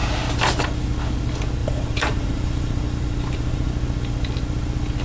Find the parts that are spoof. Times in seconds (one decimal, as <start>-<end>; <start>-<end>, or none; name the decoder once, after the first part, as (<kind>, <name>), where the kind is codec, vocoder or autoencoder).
1.6-3.7 (vocoder, BigVGAN v2)